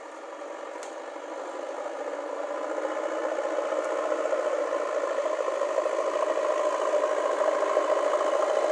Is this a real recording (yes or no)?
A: yes